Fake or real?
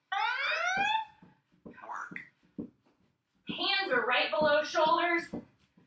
real